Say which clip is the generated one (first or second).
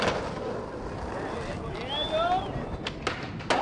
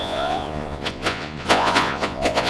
second